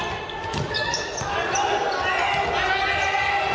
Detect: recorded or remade recorded